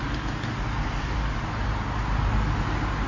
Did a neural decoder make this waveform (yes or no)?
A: no